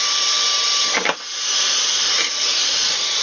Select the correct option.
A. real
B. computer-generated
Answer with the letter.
B